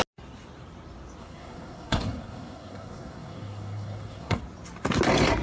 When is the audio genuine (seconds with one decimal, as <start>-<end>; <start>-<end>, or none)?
0.0-1.2; 4.4-5.4